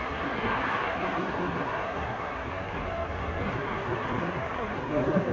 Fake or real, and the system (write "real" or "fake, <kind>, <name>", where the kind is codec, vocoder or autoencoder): fake, codec, SNAC